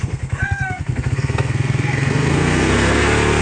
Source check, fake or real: fake